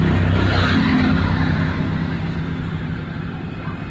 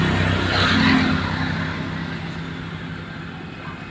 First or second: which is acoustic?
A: second